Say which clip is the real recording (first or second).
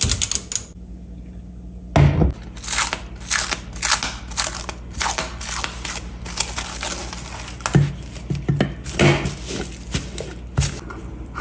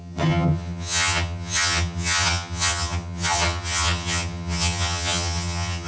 first